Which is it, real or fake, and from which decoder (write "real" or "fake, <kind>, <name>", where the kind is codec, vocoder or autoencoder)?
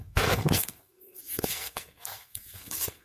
fake, codec, SNAC